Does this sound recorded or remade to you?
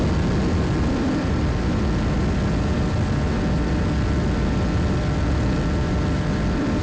recorded